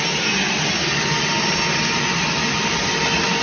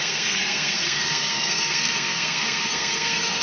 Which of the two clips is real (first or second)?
first